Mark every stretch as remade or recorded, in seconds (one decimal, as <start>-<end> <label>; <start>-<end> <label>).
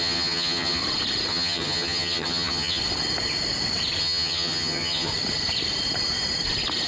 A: 0.0-0.8 remade; 0.8-1.3 recorded; 1.3-2.8 remade; 2.8-4.0 recorded; 4.0-5.1 remade; 5.1-6.9 recorded